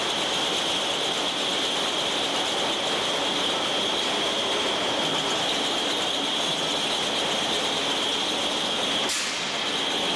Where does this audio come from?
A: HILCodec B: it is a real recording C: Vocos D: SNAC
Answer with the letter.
B